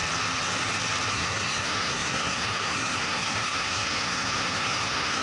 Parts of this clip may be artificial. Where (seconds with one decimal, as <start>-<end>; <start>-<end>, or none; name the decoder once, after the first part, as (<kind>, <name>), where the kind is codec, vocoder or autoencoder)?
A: 1.1-5.2 (codec, SNAC)